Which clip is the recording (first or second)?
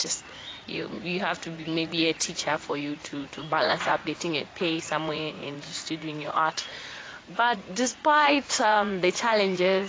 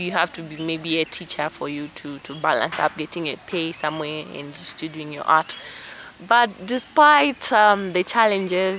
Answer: second